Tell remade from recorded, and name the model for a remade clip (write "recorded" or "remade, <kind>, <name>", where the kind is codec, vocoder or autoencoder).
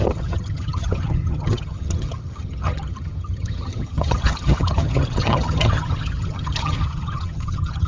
remade, vocoder, HiFi-GAN